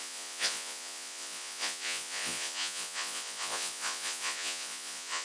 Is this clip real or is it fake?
fake